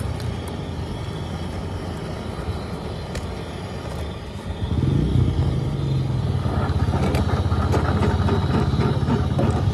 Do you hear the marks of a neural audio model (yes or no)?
no